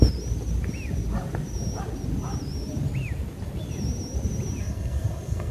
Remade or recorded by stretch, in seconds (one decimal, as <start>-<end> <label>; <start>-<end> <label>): 0.0-4.6 recorded; 4.6-5.5 remade